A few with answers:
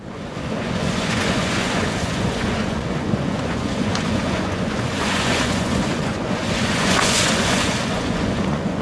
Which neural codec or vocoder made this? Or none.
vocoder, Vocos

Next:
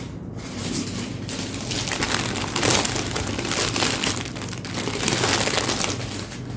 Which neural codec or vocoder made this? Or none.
none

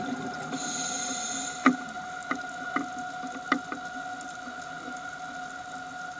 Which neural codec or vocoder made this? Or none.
none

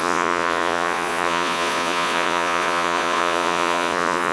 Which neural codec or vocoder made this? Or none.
vocoder, Vocos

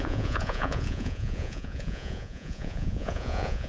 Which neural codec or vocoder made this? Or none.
vocoder, Vocos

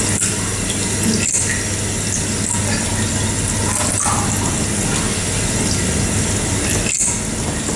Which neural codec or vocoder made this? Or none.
none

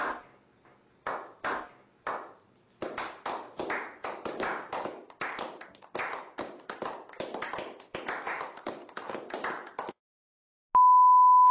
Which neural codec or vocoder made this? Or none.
none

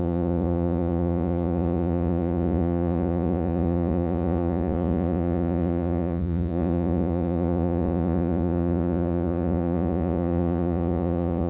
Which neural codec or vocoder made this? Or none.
vocoder, Vocos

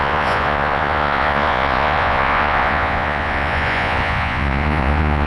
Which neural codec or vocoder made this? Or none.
vocoder, Vocos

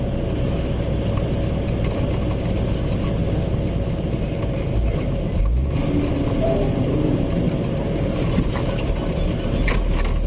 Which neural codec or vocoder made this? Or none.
none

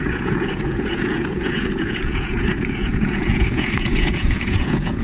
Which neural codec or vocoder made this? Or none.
vocoder, Vocos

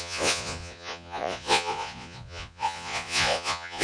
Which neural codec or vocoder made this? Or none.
vocoder, Vocos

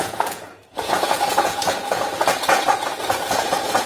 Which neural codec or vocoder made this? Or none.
vocoder, Vocos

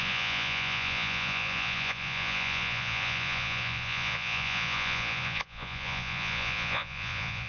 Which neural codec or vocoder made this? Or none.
vocoder, Vocos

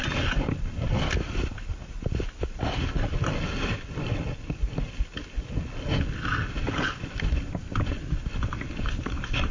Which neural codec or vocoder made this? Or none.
none